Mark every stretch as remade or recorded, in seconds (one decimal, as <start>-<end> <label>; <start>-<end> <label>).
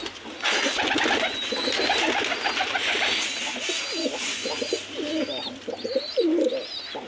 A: 0.0-7.1 recorded